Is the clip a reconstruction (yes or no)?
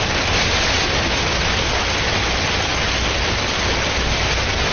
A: no